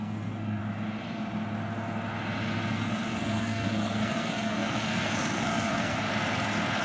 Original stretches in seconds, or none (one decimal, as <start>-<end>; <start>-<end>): 0.6-2.7; 6.1-6.8

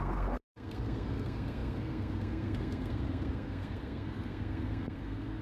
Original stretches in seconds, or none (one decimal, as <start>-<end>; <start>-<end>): none